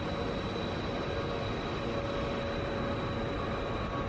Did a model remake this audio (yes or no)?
no